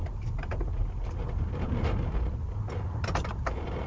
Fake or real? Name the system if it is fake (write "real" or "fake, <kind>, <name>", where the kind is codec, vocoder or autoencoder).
real